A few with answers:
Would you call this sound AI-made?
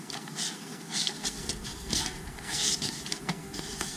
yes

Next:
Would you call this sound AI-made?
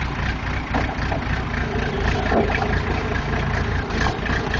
no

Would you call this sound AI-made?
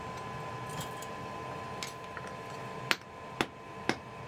no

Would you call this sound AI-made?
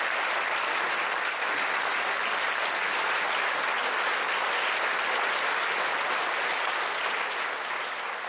no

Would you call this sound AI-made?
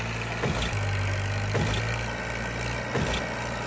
no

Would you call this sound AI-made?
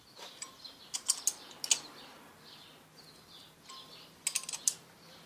no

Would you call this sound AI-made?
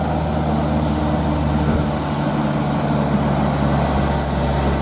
no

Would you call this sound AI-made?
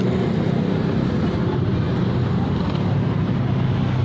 no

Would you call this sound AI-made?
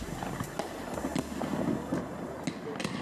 no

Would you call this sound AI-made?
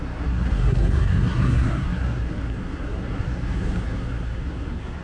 yes